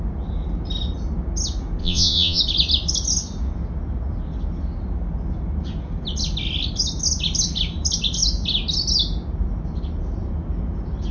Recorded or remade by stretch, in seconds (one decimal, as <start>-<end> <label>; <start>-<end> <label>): 0.0-1.8 recorded; 1.8-2.4 remade; 2.4-11.1 recorded